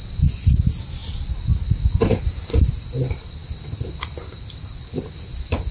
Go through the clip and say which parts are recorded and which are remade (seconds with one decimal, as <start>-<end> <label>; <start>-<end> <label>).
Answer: 0.0-5.7 recorded